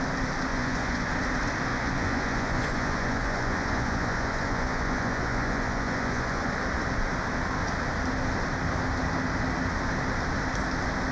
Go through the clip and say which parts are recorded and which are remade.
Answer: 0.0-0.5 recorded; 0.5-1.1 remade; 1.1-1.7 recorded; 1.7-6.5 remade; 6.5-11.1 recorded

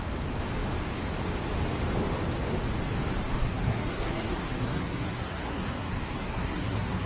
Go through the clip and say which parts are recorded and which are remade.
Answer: 0.0-3.4 recorded; 3.4-7.1 remade